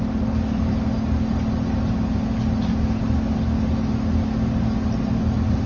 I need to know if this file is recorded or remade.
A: recorded